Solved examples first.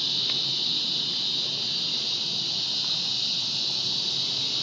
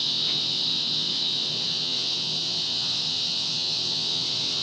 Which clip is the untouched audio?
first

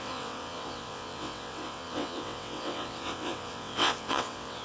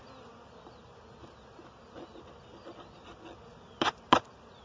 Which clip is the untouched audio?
second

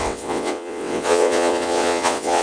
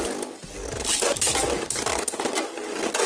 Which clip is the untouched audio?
second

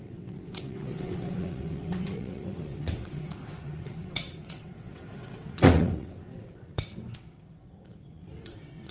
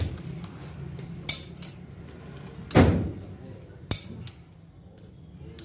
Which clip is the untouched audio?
second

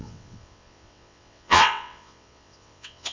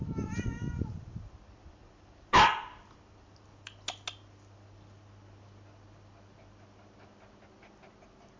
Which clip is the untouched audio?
second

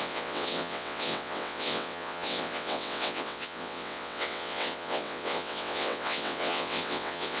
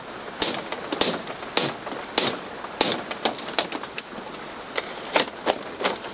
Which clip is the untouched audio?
second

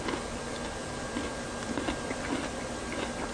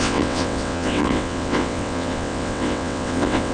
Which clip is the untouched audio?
first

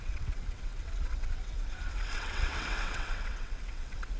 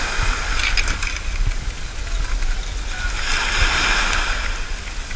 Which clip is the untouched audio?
second